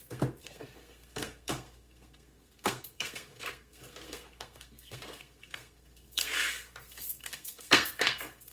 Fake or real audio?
fake